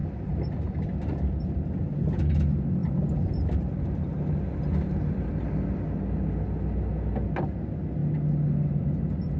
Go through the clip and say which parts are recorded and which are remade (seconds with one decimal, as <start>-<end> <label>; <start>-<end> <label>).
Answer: 0.0-1.4 remade; 1.4-2.8 recorded; 2.8-3.7 remade; 3.7-9.4 recorded